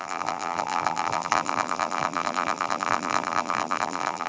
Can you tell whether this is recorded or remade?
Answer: remade